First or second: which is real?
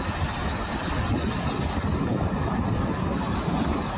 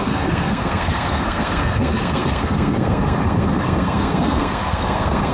first